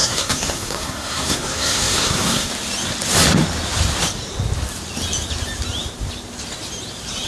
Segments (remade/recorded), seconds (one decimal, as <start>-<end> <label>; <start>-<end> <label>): 0.0-2.5 remade; 2.5-7.3 recorded